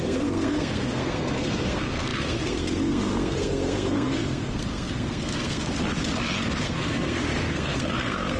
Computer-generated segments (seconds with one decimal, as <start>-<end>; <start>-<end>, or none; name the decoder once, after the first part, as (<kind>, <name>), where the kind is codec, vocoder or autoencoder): 0.0-5.7 (codec, SNAC); 6.6-8.4